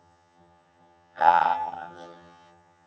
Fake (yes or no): yes